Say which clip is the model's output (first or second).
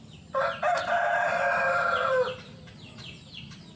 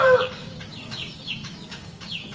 second